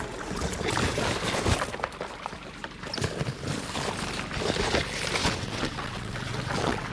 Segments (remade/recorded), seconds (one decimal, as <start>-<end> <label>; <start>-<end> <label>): 0.0-5.2 recorded; 5.2-6.9 remade